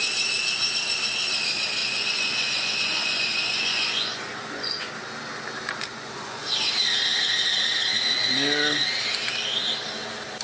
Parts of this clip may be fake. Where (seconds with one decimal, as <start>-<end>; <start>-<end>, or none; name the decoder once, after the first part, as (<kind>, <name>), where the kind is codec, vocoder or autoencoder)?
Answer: 1.8-4.9 (vocoder, Vocos); 5.9-6.5